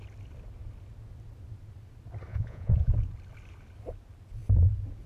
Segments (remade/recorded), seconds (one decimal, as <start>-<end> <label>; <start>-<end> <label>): 0.0-2.3 recorded; 2.3-2.9 remade; 2.9-5.1 recorded